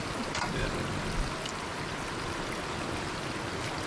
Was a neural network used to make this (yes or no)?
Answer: no